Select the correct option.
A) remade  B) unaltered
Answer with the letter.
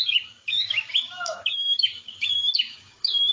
A